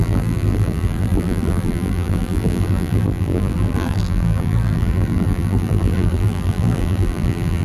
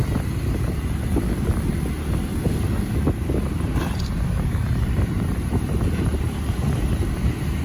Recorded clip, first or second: second